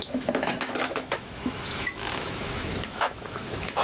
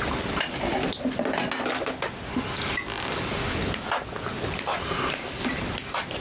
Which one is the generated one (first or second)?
first